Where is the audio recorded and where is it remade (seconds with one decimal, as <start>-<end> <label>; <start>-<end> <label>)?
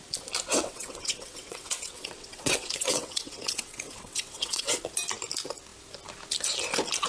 0.0-0.5 recorded; 0.5-4.8 remade; 4.8-7.1 recorded